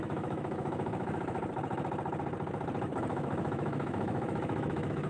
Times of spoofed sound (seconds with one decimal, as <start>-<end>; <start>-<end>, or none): 0.0-1.4; 3.1-5.1